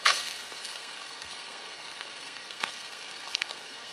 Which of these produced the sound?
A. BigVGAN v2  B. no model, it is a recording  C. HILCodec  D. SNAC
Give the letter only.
D